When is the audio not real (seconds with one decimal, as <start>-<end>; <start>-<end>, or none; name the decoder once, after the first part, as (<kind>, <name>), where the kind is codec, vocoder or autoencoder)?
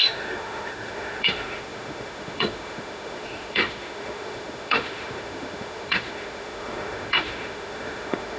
0.0-8.4 (autoencoder, DAC-VAE)